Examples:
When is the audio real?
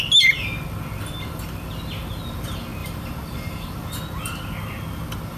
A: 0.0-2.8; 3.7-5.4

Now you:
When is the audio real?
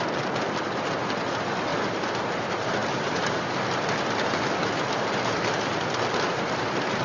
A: 1.7-2.3; 2.8-7.0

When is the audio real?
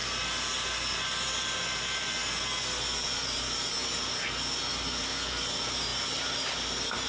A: 0.0-1.8; 2.2-4.7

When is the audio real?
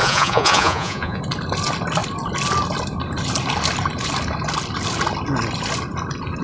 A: 1.2-6.4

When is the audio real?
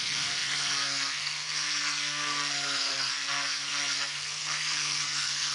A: none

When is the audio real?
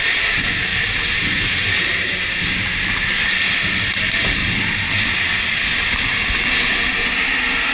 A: 0.0-7.7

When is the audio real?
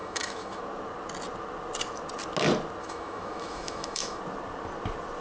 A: 0.6-2.8; 4.2-5.2